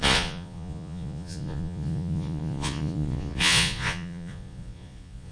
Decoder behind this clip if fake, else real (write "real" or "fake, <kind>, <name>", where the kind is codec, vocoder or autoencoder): fake, vocoder, Vocos